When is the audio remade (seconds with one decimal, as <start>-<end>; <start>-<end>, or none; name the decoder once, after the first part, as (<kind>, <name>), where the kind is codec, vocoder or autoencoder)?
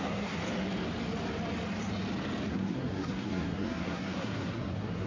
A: 0.0-0.4 (codec, SNAC); 2.5-5.1